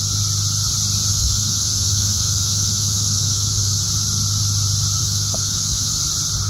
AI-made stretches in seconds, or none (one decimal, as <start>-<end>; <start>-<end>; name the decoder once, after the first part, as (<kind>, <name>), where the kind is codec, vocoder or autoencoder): 1.1-3.8 (autoencoder, DAC-VAE); 5.0-5.9